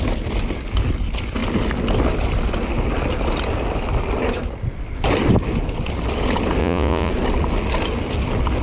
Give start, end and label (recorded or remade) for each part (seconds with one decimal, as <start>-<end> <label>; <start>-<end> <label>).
0.0-6.6 recorded; 6.6-7.1 remade; 7.1-8.6 recorded